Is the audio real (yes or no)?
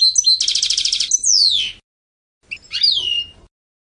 yes